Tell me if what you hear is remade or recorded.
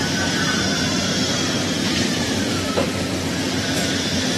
remade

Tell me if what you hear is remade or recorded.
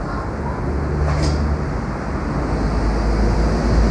recorded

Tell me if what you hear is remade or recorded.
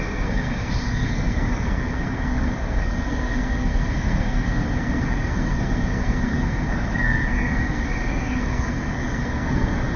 remade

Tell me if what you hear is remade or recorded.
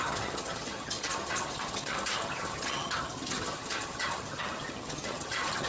remade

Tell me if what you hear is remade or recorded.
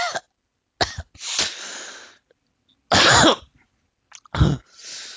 recorded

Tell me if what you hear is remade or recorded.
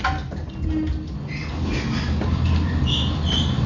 recorded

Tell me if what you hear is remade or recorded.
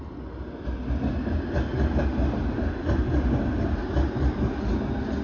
recorded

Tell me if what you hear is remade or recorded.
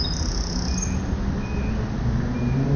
recorded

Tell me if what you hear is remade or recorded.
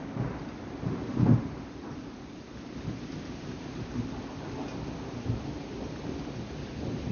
recorded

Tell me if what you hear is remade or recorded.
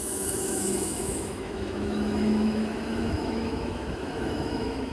remade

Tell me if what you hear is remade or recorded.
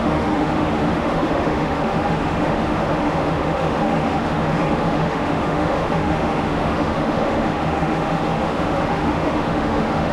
remade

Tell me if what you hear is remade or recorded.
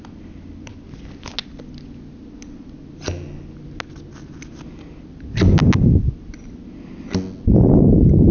recorded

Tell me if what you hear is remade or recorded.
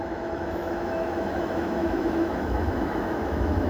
remade